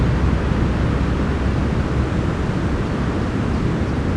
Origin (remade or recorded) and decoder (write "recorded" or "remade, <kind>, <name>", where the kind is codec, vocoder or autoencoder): recorded